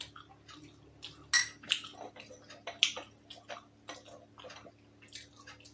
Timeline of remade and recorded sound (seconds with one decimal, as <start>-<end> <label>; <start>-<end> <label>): 0.0-5.7 recorded